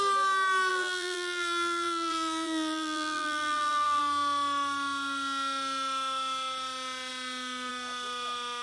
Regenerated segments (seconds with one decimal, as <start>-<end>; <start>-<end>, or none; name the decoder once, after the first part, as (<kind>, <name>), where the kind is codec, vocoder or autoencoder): 0.7-4.0 (vocoder, BigVGAN v2)